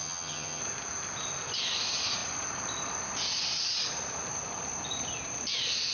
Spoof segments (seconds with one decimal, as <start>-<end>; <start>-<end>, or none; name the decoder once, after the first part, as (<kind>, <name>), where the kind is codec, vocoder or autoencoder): 0.0-0.6 (vocoder, HiFi-GAN)